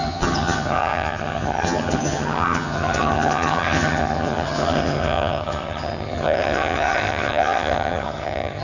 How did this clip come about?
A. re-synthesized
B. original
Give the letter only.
A